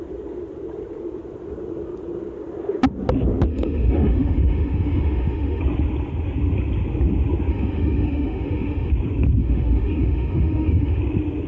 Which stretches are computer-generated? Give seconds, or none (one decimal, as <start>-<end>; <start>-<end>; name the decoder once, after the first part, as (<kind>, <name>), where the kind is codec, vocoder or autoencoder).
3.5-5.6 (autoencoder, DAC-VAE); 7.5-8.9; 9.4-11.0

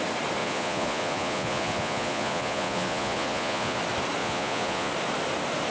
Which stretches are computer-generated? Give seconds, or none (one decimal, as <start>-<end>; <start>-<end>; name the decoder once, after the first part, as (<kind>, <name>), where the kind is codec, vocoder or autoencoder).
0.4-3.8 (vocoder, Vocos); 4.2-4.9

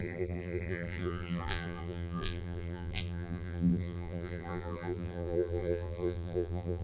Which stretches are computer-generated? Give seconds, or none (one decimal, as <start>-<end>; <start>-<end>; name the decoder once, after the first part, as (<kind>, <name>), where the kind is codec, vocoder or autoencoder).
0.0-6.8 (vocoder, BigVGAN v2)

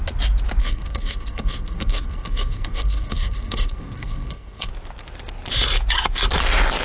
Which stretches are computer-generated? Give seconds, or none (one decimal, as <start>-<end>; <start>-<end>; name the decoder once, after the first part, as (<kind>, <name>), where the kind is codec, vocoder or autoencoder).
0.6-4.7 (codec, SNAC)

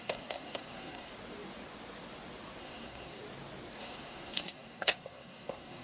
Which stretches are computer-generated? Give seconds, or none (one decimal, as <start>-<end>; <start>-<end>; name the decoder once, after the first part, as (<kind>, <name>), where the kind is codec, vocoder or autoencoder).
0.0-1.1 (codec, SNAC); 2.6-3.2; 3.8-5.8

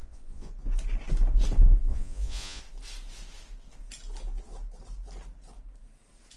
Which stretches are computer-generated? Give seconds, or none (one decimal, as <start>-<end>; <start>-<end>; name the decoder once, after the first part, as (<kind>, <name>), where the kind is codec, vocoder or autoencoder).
0.0-0.5 (vocoder, Vocos); 1.9-2.6

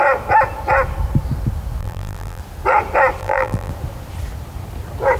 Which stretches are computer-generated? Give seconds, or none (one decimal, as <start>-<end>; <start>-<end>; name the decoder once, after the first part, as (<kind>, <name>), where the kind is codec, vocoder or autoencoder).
1.8-2.4 (vocoder, BigVGAN v2); 3.2-3.7